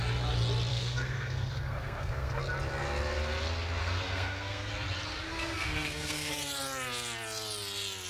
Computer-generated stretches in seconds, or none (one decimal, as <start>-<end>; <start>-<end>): 0.7-2.4; 3.8-4.7; 5.3-6.3